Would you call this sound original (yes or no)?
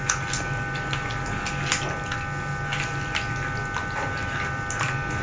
yes